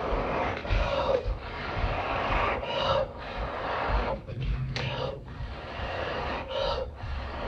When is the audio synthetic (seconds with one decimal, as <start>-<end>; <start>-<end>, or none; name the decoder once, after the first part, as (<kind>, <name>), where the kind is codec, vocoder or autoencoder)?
0.0-7.5 (codec, DAC)